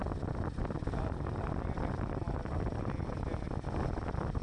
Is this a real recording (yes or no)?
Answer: yes